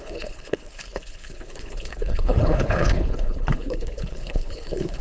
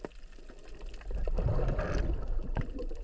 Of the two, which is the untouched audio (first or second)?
second